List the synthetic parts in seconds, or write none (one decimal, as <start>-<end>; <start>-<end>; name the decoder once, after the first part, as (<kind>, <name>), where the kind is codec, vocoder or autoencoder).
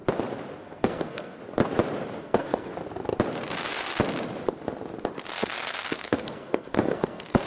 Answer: 0.6-1.4 (codec, SNAC); 2.2-2.7; 5.3-7.5